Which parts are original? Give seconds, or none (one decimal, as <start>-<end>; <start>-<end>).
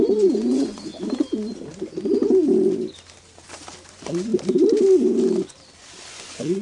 0.9-3.9; 4.3-6.1